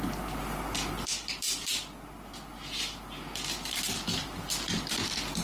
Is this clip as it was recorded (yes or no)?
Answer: yes